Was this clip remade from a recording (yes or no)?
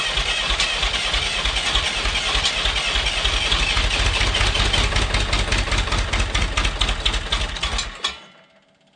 no